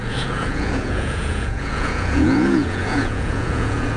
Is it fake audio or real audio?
fake